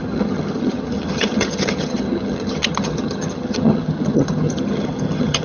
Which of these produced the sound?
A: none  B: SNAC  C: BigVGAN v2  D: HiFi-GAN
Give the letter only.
D